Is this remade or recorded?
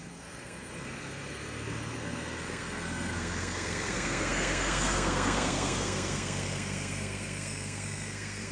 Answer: remade